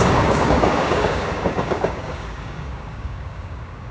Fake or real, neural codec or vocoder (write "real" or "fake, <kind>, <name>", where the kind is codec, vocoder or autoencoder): fake, codec, DAC